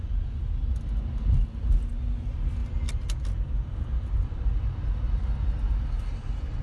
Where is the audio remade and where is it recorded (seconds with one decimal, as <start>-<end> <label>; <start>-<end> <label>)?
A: 0.0-6.6 recorded